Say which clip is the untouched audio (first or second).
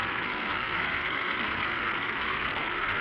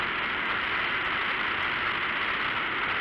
second